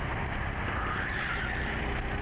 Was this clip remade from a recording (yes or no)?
no